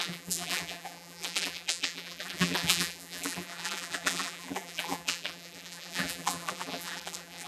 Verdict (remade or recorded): remade